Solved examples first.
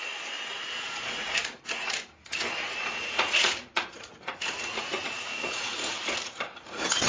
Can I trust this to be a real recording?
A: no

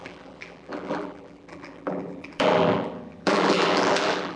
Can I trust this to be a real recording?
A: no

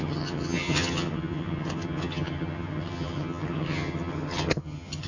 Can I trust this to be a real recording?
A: no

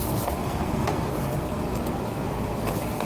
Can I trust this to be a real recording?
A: no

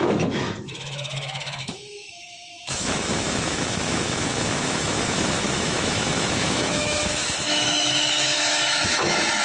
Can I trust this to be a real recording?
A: no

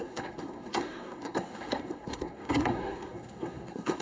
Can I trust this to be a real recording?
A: no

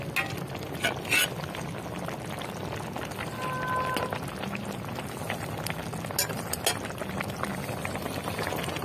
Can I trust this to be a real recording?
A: yes